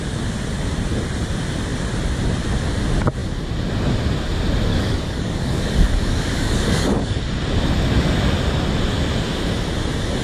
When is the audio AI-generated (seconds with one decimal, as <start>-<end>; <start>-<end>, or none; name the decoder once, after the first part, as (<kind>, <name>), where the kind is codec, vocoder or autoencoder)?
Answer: 4.7-7.2 (codec, DAC)